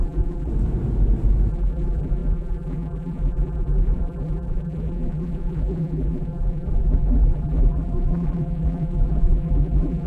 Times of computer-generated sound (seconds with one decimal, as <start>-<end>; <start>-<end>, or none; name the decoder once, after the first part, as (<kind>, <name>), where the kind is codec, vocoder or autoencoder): 0.0-0.5 (vocoder, BigVGAN v2); 1.5-10.1